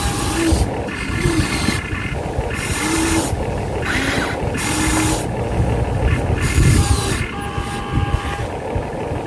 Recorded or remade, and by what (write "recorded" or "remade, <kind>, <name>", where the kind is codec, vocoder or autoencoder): recorded